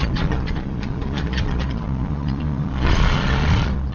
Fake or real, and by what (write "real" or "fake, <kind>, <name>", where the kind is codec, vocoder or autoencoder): fake, vocoder, Vocos